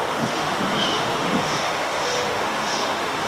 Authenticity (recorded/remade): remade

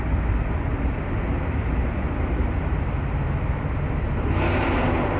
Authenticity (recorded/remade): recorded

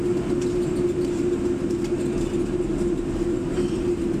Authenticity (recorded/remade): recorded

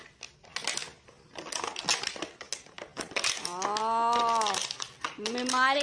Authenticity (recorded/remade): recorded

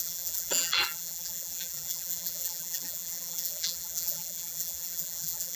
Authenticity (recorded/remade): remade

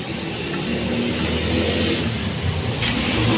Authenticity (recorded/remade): recorded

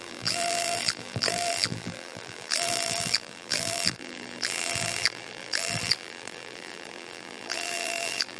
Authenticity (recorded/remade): remade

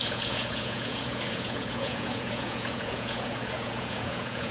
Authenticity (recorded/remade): remade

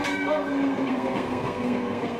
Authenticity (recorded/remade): remade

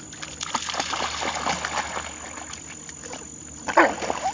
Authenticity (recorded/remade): recorded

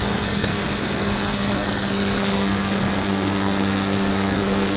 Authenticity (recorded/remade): remade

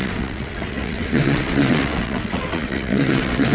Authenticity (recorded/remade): remade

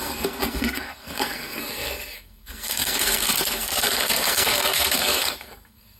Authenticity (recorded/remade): remade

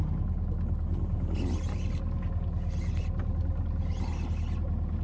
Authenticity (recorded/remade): recorded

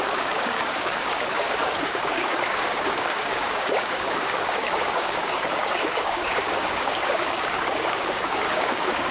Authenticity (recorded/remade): remade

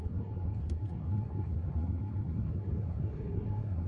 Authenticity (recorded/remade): remade